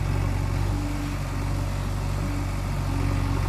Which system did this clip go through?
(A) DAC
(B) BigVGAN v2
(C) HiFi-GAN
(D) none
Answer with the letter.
D